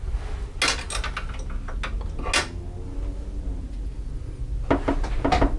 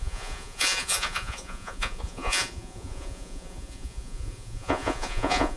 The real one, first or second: first